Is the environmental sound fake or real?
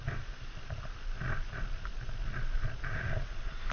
real